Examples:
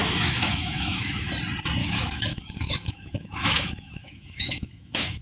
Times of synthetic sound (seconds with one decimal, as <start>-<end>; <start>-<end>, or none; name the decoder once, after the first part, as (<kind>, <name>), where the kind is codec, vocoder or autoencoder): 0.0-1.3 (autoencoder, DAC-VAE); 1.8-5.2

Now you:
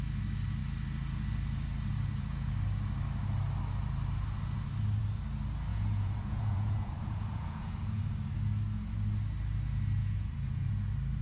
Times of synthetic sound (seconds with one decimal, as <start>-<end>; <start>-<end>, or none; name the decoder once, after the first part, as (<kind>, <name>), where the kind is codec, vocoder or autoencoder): 5.7-8.0 (vocoder, Vocos); 10.0-10.7

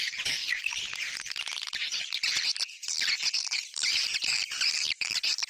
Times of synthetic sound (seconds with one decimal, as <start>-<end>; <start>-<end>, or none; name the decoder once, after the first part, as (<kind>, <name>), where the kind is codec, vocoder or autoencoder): 0.0-5.5 (vocoder, BigVGAN v2)

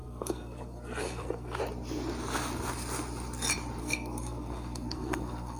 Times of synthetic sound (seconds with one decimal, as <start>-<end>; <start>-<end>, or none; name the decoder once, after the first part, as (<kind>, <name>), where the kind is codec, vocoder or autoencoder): 0.0-1.6 (codec, SNAC); 3.8-5.6

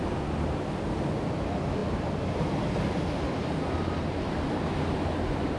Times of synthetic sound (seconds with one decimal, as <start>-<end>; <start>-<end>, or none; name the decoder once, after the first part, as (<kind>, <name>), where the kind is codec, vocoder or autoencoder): none